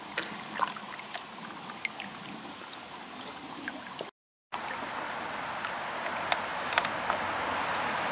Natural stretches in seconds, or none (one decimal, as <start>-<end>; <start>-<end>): 0.0-8.1